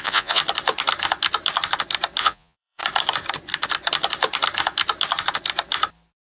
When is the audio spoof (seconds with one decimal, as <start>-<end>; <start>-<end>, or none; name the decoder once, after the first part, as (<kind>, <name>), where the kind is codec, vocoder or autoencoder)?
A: 0.0-0.4 (vocoder, Vocos); 2.2-2.8